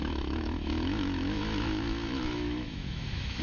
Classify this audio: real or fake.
fake